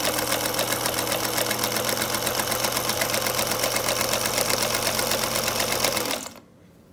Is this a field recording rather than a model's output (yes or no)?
yes